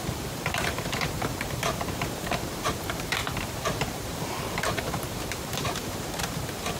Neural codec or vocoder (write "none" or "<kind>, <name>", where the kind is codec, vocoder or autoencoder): vocoder, BigVGAN v2